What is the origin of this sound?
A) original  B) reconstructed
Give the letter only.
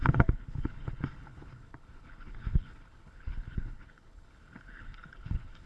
B